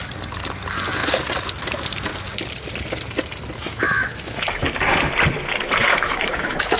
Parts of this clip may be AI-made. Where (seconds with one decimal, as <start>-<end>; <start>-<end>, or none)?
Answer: 3.7-4.7; 5.8-6.8